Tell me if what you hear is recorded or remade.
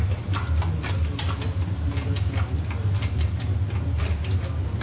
recorded